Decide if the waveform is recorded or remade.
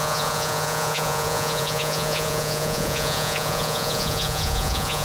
remade